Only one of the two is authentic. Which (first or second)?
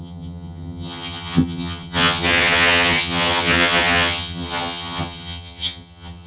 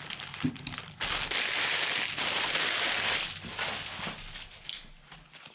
second